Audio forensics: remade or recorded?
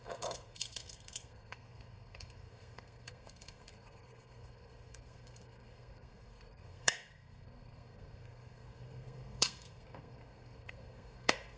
remade